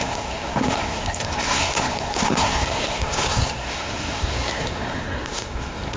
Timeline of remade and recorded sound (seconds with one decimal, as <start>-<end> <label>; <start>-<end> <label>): 0.0-6.0 remade